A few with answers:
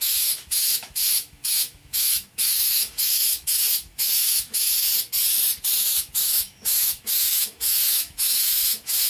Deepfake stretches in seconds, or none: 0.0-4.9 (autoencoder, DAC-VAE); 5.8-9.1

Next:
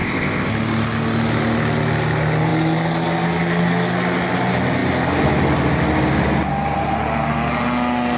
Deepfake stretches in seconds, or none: 0.0-0.5 (codec, ZipCodec)

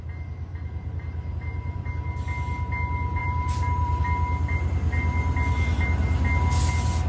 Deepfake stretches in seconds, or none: 0.5-1.9 (vocoder, BigVGAN v2); 3.2-4.0

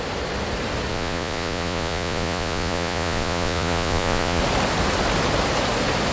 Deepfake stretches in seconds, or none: 0.9-4.4 (vocoder, Vocos)

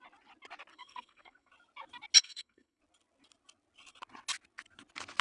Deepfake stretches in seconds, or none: 0.7-1.5 (codec, SNAC); 2.2-2.8

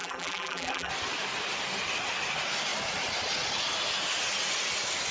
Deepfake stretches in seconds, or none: 0.0-0.9 (vocoder, BigVGAN v2)

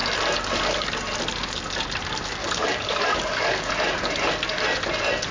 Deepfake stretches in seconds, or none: 2.4-3.7 (codec, DAC)

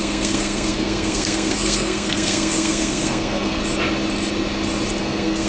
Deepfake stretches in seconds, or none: 0.0-3.6 (codec, SNAC); 5.0-5.5